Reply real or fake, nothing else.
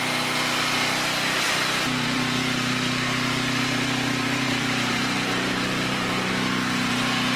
fake